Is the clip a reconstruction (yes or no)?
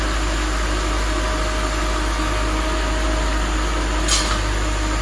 no